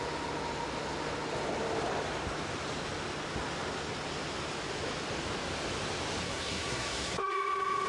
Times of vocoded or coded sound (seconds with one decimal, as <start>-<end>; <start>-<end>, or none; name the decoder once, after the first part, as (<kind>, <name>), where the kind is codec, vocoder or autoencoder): 6.2-7.3 (codec, SNAC)